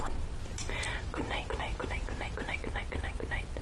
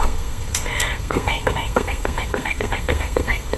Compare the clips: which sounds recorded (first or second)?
first